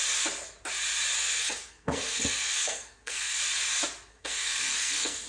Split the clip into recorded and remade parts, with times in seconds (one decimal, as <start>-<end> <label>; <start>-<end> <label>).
0.0-1.2 recorded; 1.2-3.4 remade; 3.4-4.1 recorded; 4.1-5.3 remade